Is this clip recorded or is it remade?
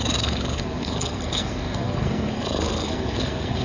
remade